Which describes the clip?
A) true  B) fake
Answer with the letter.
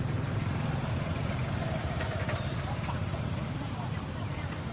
B